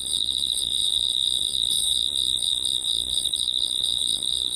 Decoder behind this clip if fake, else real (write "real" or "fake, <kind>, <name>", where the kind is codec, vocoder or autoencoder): fake, vocoder, Vocos